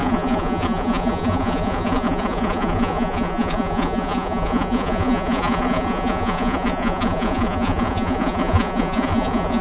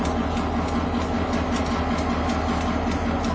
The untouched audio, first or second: second